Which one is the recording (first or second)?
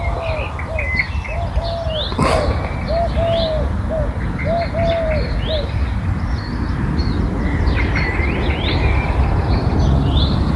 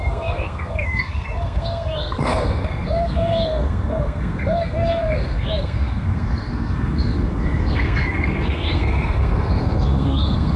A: first